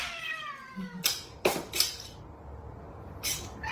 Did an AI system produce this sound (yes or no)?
no